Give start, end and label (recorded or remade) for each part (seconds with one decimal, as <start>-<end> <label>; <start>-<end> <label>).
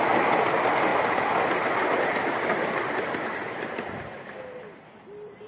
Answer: 0.0-5.5 recorded